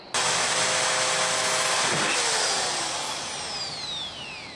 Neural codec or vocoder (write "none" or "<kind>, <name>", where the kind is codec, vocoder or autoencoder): none